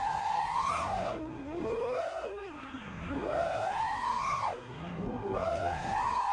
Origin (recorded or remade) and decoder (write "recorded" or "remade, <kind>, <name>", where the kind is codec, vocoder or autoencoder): remade, codec, SNAC